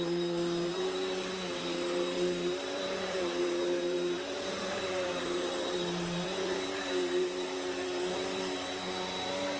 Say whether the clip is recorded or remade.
remade